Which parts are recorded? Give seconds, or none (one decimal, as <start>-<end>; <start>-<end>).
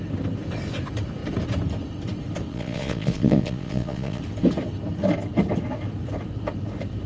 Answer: 0.0-2.5; 4.2-7.1